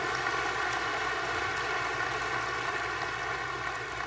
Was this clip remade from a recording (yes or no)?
no